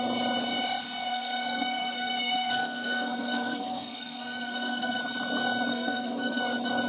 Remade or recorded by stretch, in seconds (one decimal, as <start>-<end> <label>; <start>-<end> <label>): 0.0-1.1 recorded; 1.1-5.0 remade; 5.0-5.7 recorded; 5.7-6.4 remade; 6.4-6.9 recorded